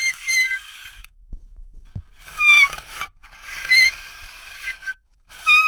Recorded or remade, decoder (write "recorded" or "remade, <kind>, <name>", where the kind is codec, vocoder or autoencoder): remade, codec, DAC